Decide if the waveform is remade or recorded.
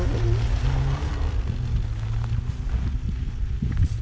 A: recorded